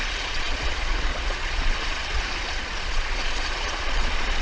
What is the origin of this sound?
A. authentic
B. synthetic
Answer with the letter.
B